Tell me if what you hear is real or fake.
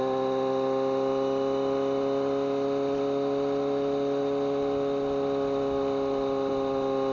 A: real